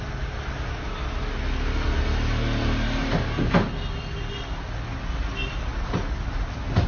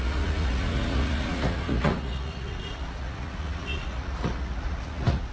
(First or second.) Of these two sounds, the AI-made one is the second